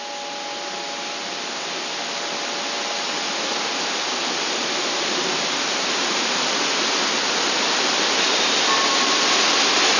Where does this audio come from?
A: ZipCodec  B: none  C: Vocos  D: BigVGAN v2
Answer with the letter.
B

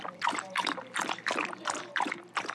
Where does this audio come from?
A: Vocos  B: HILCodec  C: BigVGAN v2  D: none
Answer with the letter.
C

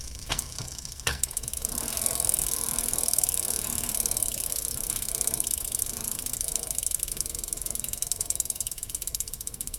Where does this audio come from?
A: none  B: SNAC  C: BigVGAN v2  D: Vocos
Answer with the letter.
B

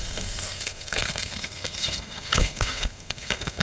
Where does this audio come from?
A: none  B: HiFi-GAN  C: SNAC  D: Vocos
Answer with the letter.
C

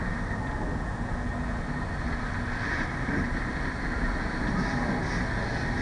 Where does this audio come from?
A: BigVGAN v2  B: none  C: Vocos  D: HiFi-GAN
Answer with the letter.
B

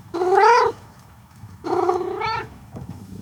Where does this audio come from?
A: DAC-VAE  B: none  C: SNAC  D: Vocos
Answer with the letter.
A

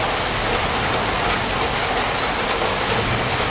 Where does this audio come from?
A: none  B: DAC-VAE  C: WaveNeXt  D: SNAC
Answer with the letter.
A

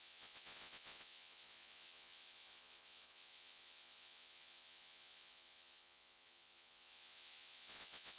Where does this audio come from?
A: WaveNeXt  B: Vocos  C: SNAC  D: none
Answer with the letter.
B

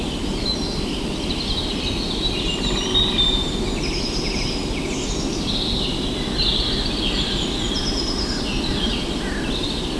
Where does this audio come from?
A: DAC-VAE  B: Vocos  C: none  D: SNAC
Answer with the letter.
C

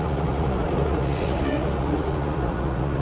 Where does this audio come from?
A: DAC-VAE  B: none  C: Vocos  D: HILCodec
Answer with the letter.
C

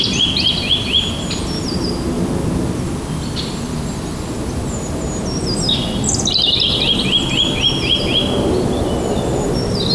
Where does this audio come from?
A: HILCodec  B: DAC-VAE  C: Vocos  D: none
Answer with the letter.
D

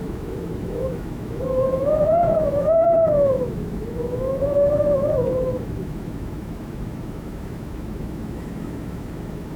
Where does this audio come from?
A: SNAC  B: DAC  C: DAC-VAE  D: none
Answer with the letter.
C